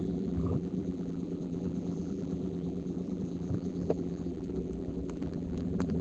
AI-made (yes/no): yes